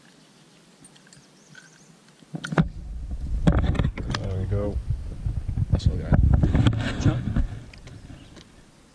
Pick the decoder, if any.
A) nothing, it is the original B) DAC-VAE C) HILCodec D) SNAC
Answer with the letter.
A